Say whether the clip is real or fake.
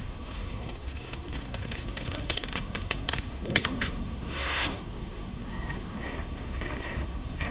fake